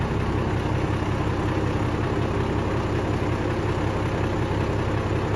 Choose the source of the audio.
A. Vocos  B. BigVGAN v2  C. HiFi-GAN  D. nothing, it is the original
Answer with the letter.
D